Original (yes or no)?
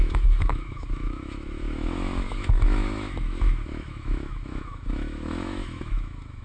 no